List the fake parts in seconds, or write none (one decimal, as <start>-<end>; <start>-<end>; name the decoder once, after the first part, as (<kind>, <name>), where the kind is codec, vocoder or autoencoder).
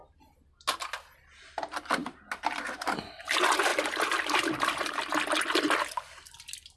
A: 3.7-5.0 (vocoder, BigVGAN v2)